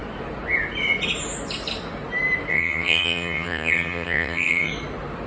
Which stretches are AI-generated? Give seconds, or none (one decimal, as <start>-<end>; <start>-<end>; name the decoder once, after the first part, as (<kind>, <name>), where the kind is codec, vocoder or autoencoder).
2.5-4.7 (vocoder, HiFi-GAN)